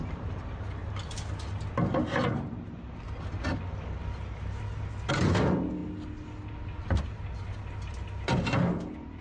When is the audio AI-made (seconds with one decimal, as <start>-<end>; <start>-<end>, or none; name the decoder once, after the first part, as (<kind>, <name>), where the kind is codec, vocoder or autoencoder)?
none